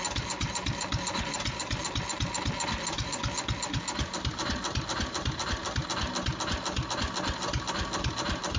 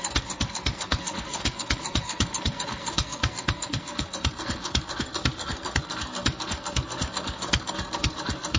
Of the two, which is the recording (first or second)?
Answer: first